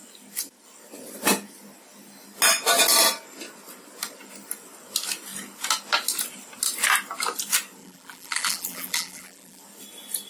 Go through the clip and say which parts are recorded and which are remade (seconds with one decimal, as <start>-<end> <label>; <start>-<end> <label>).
0.0-7.8 recorded; 7.8-9.6 remade; 9.6-10.3 recorded